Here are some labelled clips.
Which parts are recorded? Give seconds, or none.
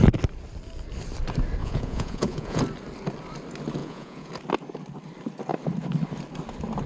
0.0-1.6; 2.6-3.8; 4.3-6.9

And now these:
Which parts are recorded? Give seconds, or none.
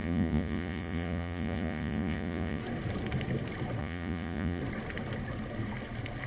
2.6-3.8; 4.6-6.3